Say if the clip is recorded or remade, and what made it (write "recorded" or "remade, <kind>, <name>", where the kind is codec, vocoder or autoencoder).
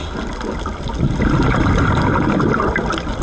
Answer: recorded